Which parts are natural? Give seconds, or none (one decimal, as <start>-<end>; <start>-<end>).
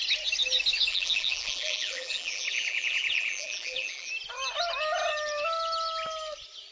0.0-0.9; 4.1-6.7